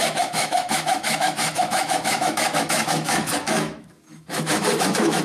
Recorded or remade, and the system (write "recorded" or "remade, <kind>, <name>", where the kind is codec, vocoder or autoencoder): remade, autoencoder, DAC-VAE